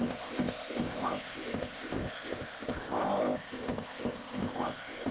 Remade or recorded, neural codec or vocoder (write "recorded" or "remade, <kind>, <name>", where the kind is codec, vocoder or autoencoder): remade, codec, ZipCodec